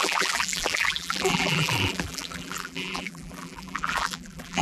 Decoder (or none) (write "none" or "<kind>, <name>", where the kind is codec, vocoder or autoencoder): vocoder, BigVGAN v2